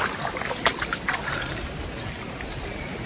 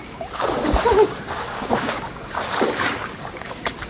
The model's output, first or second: second